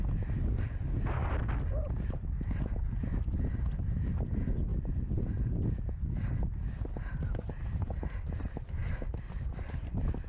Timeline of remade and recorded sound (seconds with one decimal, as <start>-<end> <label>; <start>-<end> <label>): 0.0-10.3 recorded